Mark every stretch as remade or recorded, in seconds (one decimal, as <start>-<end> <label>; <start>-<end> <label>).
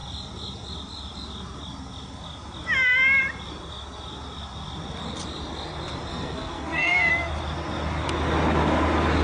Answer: 0.0-6.1 recorded; 6.1-7.1 remade; 7.1-9.2 recorded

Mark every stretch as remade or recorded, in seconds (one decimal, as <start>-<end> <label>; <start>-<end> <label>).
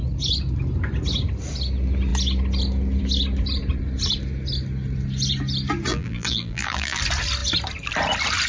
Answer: 0.0-5.9 recorded; 5.9-7.0 remade; 7.0-8.5 recorded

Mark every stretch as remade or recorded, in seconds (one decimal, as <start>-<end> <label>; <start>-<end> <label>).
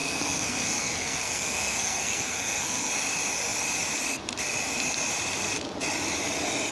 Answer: 0.0-2.9 remade; 2.9-6.7 recorded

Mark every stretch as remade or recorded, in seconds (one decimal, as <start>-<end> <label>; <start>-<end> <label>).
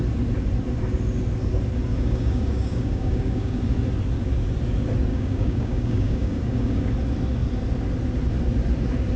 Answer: 0.0-1.9 recorded; 1.9-3.6 remade; 3.6-5.1 recorded; 5.1-6.9 remade; 6.9-9.2 recorded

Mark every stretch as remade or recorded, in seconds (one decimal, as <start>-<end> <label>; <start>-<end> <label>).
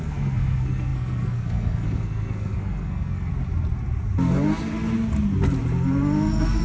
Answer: 0.0-3.3 remade; 3.3-6.6 recorded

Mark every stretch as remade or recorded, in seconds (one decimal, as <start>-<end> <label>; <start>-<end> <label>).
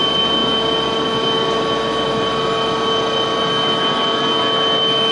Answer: 0.0-5.1 recorded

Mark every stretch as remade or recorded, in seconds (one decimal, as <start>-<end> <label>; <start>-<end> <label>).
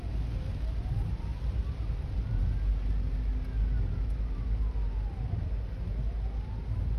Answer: 0.0-7.0 recorded